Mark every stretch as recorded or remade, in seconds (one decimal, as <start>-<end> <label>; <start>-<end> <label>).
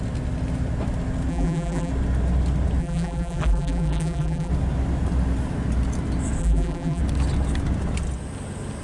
0.0-1.3 recorded; 1.3-1.9 remade; 1.9-2.8 recorded; 2.8-4.5 remade; 4.5-6.4 recorded; 6.4-7.0 remade; 7.0-8.8 recorded